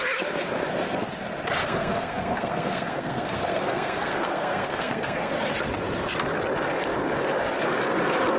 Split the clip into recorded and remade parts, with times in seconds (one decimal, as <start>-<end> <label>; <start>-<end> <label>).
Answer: 0.0-1.6 recorded; 1.6-5.4 remade; 5.4-8.4 recorded